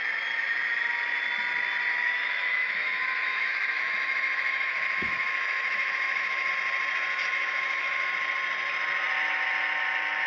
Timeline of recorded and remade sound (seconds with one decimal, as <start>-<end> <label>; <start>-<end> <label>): 0.0-1.9 recorded; 1.9-6.5 remade; 6.5-7.3 recorded; 7.3-8.1 remade; 8.1-10.3 recorded

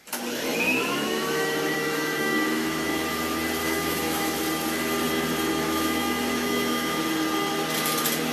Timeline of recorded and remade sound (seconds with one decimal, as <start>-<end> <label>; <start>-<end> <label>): 0.0-0.5 recorded; 0.5-3.2 remade; 3.2-3.6 recorded; 3.6-4.4 remade; 4.4-5.5 recorded; 5.5-7.0 remade; 7.0-8.3 recorded